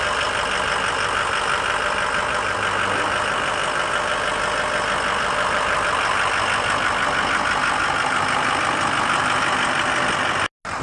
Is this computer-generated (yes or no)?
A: no